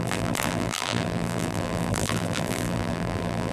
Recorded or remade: remade